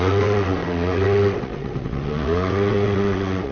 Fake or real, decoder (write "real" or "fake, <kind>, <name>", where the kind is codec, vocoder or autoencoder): fake, vocoder, WaveNeXt